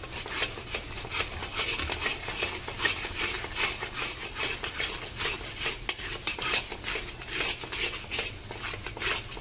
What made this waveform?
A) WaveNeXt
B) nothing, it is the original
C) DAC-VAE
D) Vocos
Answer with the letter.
B